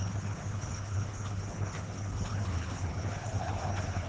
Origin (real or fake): fake